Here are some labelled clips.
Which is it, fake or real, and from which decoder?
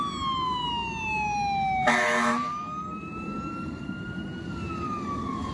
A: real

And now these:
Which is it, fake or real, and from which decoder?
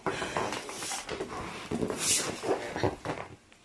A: real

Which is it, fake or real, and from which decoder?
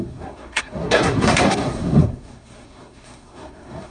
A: fake, codec, SNAC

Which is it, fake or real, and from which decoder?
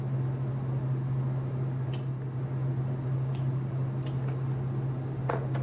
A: real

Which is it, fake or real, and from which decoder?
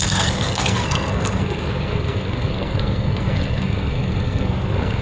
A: fake, codec, SNAC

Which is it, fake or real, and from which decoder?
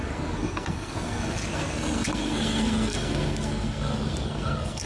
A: fake, codec, SNAC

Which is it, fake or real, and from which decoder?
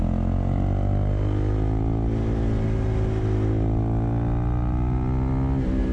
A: real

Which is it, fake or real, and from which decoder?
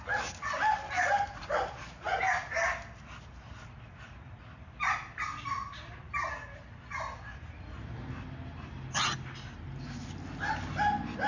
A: real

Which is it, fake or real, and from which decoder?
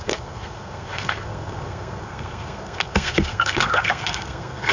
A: fake, codec, SNAC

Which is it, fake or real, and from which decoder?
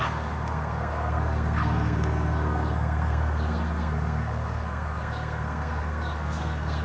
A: fake, codec, SNAC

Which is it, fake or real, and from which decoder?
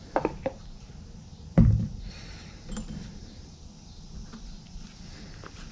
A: real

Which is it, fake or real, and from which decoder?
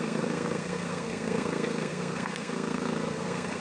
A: fake, codec, SNAC